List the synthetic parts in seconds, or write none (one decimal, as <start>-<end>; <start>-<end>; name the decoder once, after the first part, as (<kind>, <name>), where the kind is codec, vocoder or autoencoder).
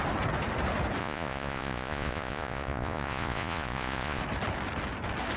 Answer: 1.0-4.2 (vocoder, Vocos)